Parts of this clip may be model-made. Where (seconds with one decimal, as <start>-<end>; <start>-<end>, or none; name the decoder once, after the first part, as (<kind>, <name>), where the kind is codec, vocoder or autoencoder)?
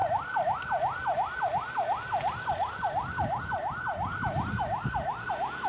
none